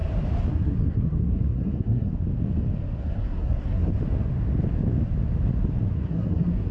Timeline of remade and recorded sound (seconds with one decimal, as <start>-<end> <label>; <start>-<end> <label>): 0.0-0.5 recorded; 0.5-2.1 remade; 2.1-3.0 recorded; 3.0-3.9 remade; 3.9-5.8 recorded; 5.8-6.7 remade